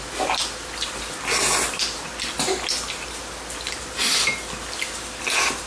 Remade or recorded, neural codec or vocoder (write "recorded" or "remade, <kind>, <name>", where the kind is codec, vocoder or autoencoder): recorded